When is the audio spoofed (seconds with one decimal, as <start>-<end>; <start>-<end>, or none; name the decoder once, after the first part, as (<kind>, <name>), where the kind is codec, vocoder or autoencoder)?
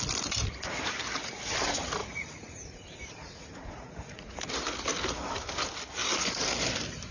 2.0-4.5 (vocoder, Vocos)